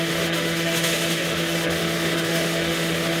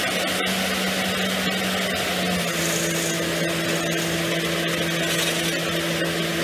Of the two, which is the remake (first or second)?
first